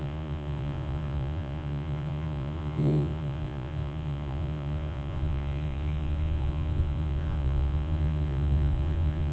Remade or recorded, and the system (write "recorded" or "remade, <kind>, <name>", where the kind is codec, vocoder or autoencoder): remade, vocoder, Vocos